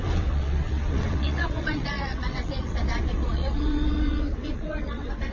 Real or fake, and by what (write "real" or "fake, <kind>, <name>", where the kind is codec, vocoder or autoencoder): fake, vocoder, WaveNeXt